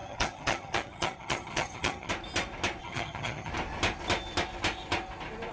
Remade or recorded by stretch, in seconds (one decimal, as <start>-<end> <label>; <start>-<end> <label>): 0.0-2.1 remade; 2.1-2.8 recorded; 2.8-3.5 remade; 3.5-5.5 recorded